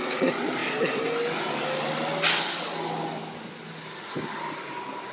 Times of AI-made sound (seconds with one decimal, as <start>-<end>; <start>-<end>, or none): none